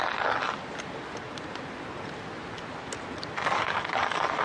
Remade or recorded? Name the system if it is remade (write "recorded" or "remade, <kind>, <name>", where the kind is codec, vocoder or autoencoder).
recorded